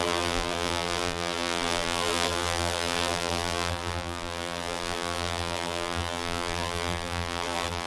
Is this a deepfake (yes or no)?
yes